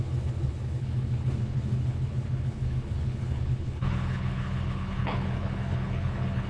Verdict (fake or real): fake